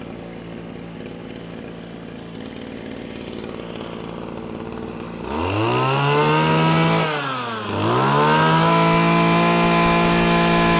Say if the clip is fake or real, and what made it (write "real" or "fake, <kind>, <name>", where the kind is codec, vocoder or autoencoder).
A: real